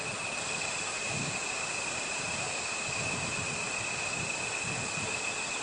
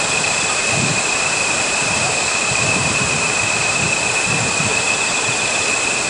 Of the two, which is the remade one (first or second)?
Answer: second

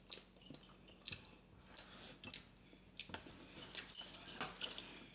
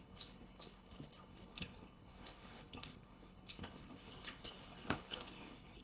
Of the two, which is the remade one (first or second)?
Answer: second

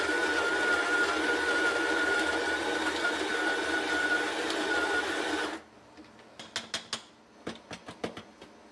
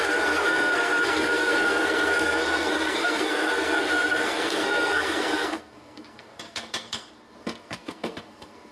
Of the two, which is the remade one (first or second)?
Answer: second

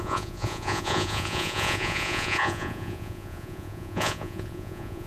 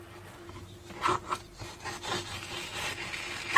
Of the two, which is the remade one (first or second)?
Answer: first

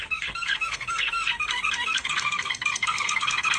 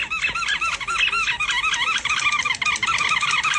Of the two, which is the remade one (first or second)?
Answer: first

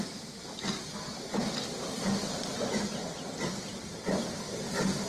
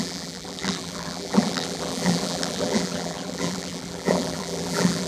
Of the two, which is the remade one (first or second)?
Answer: second